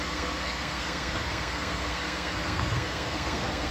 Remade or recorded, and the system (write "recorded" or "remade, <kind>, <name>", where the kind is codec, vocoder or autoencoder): remade, codec, SNAC